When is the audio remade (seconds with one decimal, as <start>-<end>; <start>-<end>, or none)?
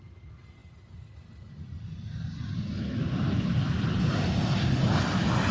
none